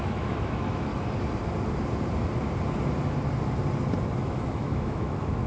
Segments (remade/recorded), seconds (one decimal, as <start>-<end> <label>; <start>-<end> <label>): 0.0-0.9 remade; 0.9-4.2 recorded; 4.2-5.5 remade